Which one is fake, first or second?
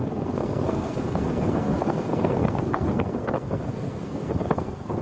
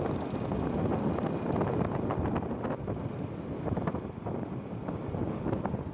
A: first